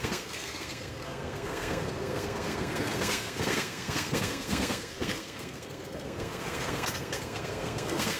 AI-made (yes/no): yes